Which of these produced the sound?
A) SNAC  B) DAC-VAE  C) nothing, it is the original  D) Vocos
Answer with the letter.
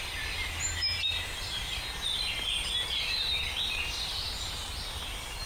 C